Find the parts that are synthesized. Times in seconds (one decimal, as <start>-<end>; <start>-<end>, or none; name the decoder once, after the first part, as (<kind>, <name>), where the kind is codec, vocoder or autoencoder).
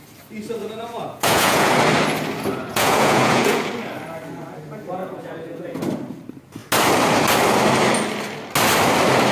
0.6-1.7 (vocoder, Vocos); 2.7-3.7; 5.0-5.8